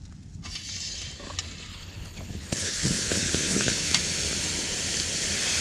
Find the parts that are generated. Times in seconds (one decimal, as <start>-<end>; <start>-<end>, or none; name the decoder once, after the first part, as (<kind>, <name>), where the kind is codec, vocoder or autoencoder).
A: 1.7-3.9 (codec, HILCodec)